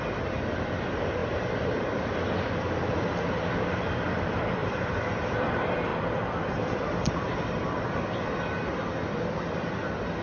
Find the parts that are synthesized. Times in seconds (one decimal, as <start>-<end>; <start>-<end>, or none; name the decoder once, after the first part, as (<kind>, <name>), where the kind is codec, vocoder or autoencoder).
4.6-5.3 (vocoder, BigVGAN v2); 5.9-8.3